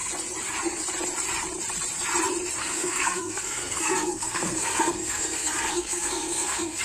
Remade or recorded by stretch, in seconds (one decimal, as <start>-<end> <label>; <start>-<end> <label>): 0.0-2.6 recorded; 2.6-6.8 remade